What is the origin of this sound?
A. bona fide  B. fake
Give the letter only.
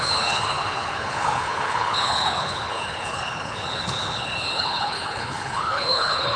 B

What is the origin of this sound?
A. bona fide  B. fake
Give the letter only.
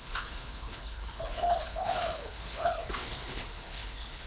B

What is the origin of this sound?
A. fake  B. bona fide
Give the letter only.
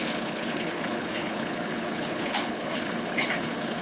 A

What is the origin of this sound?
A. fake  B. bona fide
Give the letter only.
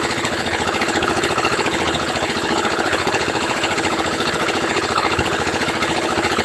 A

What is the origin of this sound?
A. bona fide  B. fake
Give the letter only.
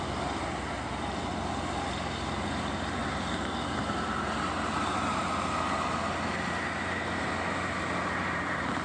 A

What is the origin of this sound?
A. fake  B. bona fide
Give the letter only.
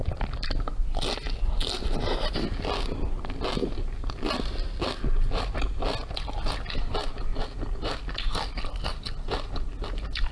B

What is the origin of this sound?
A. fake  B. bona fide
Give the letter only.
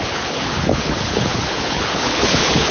A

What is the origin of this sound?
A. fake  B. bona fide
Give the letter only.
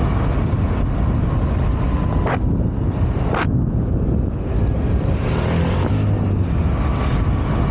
B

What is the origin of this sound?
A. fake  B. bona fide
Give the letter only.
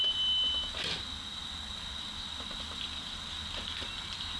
B